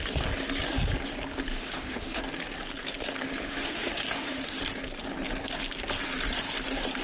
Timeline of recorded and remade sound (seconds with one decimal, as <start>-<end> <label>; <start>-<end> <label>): 0.0-1.5 recorded; 1.5-2.2 remade; 2.2-3.4 recorded; 3.4-4.6 remade; 4.6-7.0 recorded